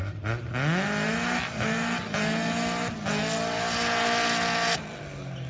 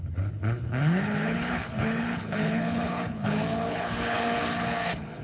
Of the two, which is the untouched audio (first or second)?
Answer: first